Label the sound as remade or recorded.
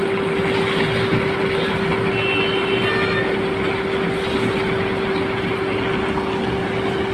recorded